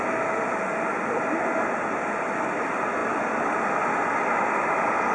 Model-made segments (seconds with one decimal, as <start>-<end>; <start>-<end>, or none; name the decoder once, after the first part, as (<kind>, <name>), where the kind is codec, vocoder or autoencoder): 3.0-3.5 (vocoder, BigVGAN v2)